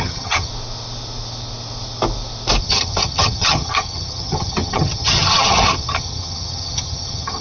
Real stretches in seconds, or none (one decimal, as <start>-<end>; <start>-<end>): 0.5-2.6